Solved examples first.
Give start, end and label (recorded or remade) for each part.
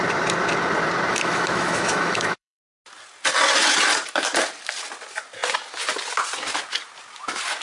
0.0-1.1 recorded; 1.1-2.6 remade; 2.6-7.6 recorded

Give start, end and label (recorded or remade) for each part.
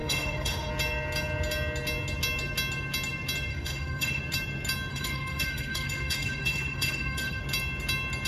0.0-0.7 remade; 0.7-3.5 recorded; 3.5-4.2 remade; 4.2-4.9 recorded; 4.9-7.4 remade; 7.4-8.3 recorded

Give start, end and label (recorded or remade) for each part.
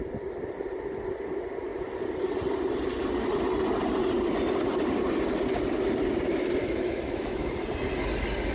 0.0-6.6 recorded; 6.6-7.5 remade; 7.5-8.5 recorded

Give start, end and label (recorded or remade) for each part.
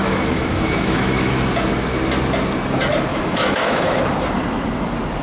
0.0-1.3 remade; 1.3-3.1 recorded; 3.1-4.0 remade; 4.0-5.2 recorded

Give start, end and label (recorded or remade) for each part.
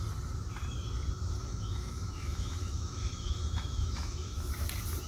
0.0-1.4 recorded; 1.4-4.5 remade; 4.5-5.1 recorded